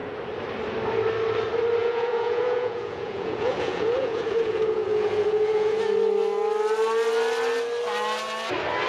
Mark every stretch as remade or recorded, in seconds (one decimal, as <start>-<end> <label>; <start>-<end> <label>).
0.0-1.8 recorded; 1.8-5.8 remade; 5.8-8.9 recorded